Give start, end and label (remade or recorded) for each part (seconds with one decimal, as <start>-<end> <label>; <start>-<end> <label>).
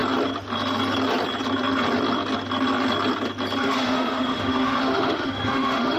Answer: 0.0-3.6 recorded; 3.6-6.0 remade